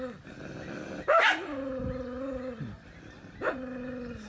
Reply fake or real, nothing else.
real